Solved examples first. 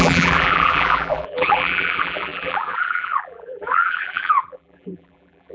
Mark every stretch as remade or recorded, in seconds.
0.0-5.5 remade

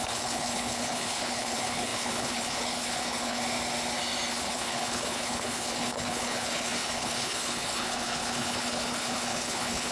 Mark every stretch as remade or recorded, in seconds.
0.0-3.4 remade; 3.4-4.3 recorded; 4.3-9.9 remade

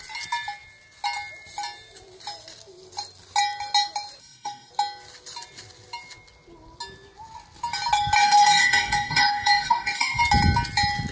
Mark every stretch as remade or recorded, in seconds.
0.0-4.2 recorded; 4.2-4.7 remade; 4.7-8.2 recorded; 8.2-10.2 remade; 10.2-11.1 recorded

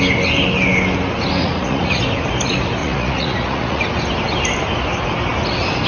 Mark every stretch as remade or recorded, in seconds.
0.0-1.4 recorded; 1.4-2.0 remade; 2.0-2.8 recorded; 2.8-3.8 remade; 3.8-5.9 recorded

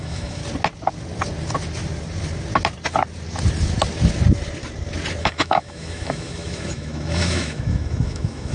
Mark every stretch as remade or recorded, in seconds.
0.0-0.4 remade; 0.4-5.2 recorded; 5.2-8.5 remade

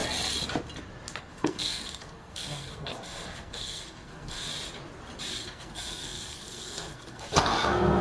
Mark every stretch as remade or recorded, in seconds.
0.0-1.2 recorded; 1.2-4.5 remade; 4.5-5.4 recorded; 5.4-8.0 remade